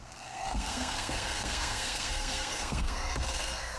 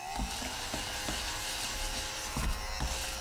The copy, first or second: first